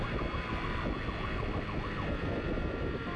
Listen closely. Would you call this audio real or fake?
real